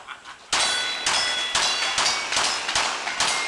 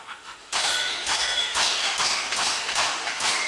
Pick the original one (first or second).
first